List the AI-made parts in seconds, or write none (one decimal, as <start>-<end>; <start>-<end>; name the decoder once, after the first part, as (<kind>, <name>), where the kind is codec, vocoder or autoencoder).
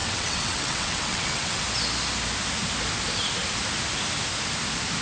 0.0-1.6 (vocoder, WaveNeXt)